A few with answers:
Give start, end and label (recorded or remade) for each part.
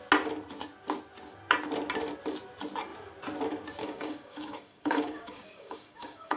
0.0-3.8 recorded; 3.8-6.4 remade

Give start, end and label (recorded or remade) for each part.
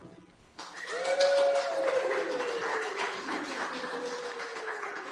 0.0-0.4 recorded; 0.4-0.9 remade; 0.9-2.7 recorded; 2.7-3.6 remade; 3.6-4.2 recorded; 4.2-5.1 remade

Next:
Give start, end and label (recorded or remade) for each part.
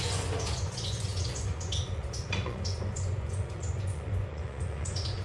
0.0-5.2 remade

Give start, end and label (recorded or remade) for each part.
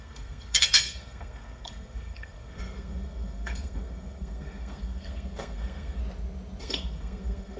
0.0-6.0 remade; 6.0-6.6 recorded; 6.6-7.6 remade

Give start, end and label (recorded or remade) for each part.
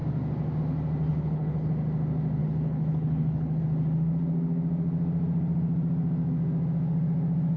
0.0-1.1 recorded; 1.1-1.7 remade; 1.7-2.4 recorded; 2.4-3.6 remade; 3.6-7.6 recorded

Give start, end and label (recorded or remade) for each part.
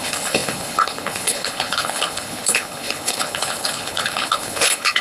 0.0-5.0 remade